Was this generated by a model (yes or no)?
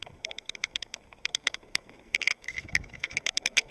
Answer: yes